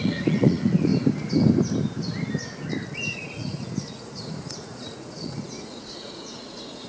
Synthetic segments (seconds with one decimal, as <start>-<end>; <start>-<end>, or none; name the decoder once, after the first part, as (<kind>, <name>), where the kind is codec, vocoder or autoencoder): 0.0-0.9 (vocoder, Vocos); 3.0-6.9